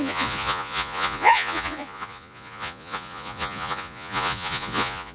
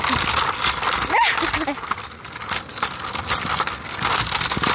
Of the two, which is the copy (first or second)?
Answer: first